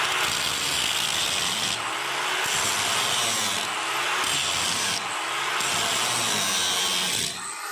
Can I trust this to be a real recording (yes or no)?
yes